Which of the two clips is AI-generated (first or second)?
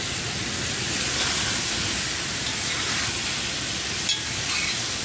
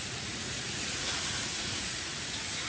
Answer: second